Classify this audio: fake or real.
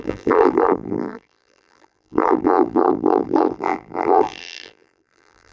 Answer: fake